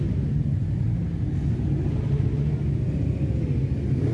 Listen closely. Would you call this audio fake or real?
real